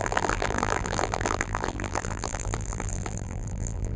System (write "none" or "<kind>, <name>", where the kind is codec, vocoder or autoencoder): vocoder, BigVGAN v2